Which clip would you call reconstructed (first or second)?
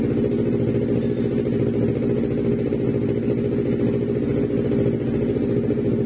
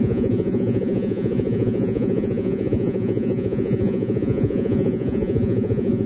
second